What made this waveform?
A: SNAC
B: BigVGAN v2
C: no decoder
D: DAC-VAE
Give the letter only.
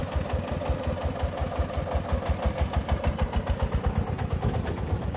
C